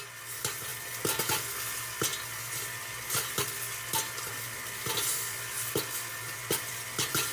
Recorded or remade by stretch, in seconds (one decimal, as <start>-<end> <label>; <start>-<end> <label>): 0.0-7.3 recorded